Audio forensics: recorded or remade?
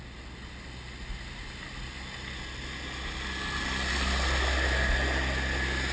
recorded